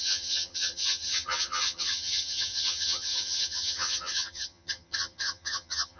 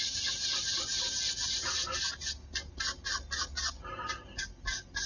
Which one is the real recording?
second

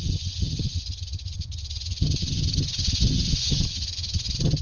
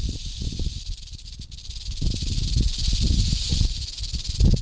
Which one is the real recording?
second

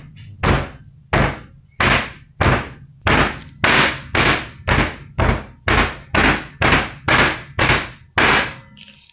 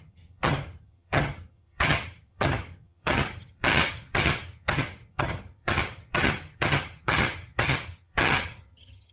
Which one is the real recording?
first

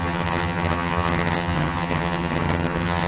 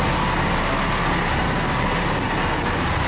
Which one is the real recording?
second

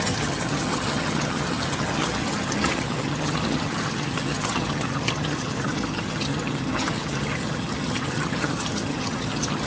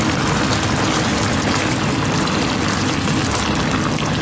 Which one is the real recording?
second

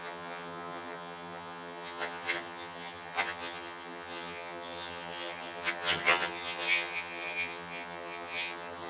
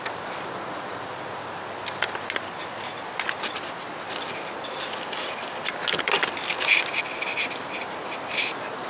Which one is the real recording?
second